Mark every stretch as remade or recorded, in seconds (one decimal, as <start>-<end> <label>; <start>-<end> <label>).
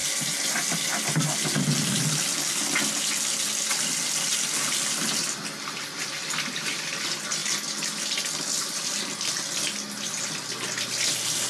0.0-7.4 recorded; 7.4-9.3 remade; 9.3-11.5 recorded